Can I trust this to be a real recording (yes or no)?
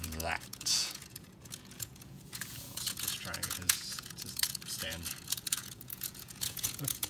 no